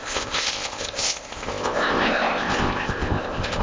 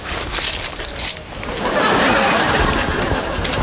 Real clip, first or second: second